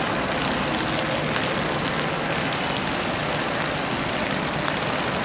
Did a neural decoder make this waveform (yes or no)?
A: no